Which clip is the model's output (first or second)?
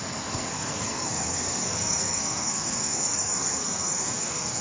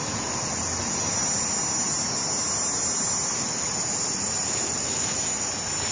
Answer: first